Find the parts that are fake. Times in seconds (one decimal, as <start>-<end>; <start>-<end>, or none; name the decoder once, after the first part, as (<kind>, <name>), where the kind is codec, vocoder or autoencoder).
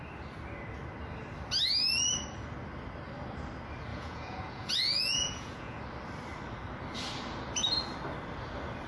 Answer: 3.9-5.8 (vocoder, Vocos)